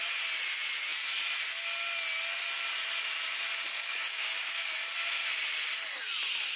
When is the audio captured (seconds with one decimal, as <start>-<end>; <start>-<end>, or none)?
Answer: 0.0-3.7; 4.7-6.6